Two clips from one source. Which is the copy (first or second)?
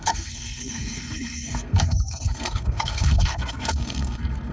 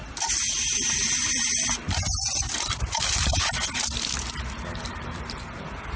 first